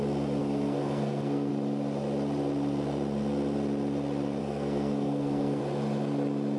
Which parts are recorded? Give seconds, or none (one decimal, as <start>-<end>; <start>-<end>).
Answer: 0.0-0.4; 1.5-4.4; 5.6-6.6